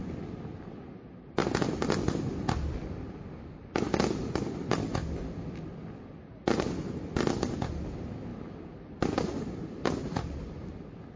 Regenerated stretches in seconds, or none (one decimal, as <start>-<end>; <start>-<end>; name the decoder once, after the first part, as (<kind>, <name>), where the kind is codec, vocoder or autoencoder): 1.4-5.8 (vocoder, BigVGAN v2); 8.3-9.6